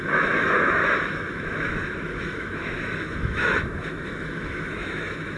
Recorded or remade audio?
remade